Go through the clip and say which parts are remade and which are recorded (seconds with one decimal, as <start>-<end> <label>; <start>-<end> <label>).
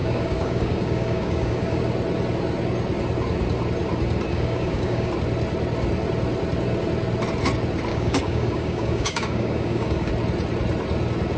0.0-1.8 remade; 1.8-4.3 recorded; 4.3-5.1 remade; 5.1-7.9 recorded; 7.9-10.1 remade; 10.1-11.4 recorded